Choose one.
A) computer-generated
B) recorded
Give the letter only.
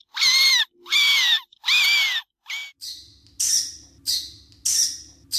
B